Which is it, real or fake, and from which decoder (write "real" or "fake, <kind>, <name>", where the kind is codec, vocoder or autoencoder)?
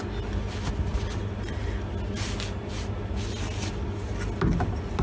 real